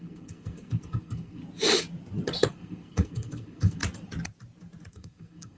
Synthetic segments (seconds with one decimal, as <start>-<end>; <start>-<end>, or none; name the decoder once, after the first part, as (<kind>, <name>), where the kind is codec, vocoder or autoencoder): 0.0-1.4 (codec, SNAC); 2.5-3.8; 4.9-5.6